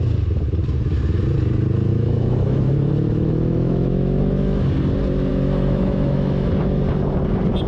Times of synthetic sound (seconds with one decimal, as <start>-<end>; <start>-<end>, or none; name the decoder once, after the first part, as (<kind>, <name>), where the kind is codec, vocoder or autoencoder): 1.9-4.7 (autoencoder, DAC-VAE); 5.3-6.5